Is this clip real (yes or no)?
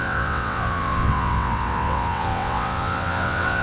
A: no